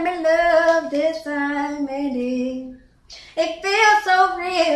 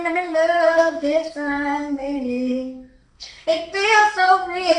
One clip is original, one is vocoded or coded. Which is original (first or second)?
first